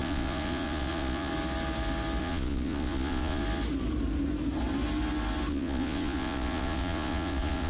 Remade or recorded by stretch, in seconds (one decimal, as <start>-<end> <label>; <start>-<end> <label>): 0.0-1.3 remade; 1.3-2.2 recorded; 2.2-3.4 remade; 3.4-5.5 recorded; 5.5-7.7 remade